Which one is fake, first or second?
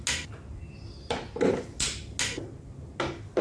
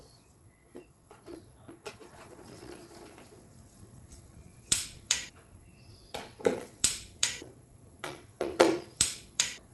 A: second